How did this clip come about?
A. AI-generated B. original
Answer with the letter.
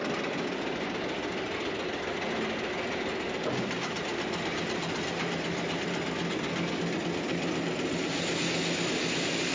B